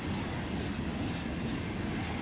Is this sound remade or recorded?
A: recorded